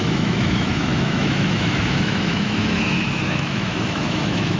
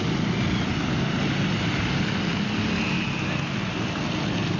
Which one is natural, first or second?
second